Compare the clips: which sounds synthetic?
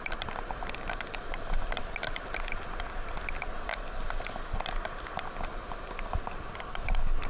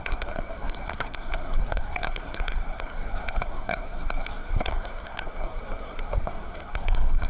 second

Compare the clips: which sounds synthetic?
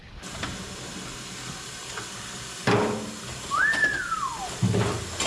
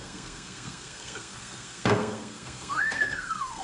second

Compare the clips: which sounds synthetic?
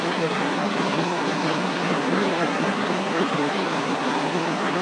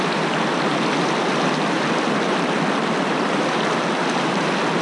first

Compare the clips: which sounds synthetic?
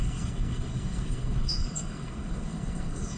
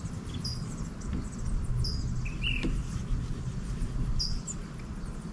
first